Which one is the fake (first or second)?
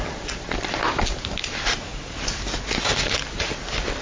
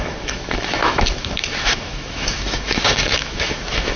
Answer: second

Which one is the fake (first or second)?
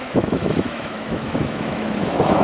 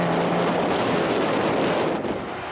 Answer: first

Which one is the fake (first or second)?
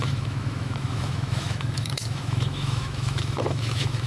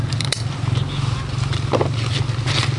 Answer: first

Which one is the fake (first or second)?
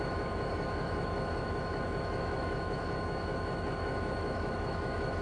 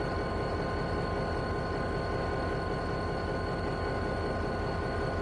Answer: first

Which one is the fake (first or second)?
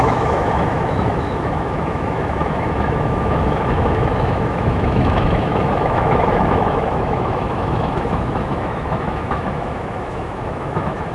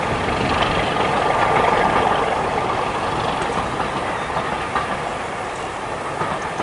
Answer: first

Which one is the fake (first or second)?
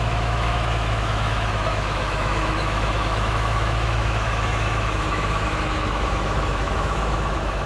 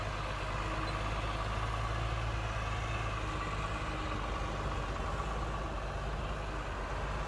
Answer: first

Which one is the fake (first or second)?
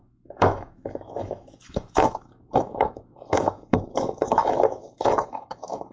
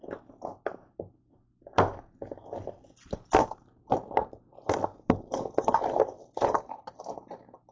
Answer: first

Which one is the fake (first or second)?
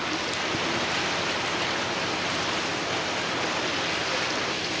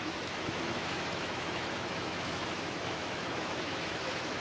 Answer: second